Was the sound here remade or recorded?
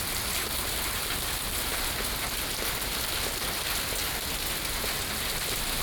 remade